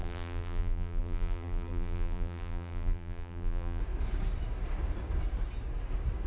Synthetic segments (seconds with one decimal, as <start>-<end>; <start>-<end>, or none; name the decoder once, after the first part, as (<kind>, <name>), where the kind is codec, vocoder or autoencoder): 0.0-3.8 (vocoder, BigVGAN v2)